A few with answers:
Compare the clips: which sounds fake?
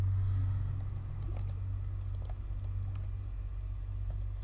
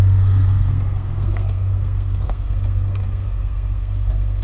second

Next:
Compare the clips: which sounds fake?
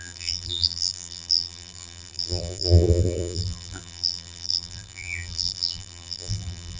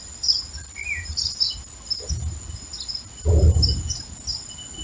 first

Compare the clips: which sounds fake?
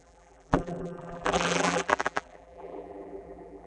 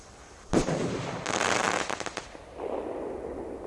first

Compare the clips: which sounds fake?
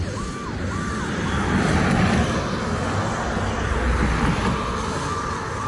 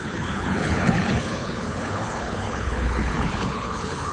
second